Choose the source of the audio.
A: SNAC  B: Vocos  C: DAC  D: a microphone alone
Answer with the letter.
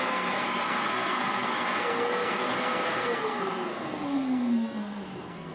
A